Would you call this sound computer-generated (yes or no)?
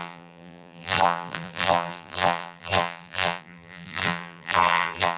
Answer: yes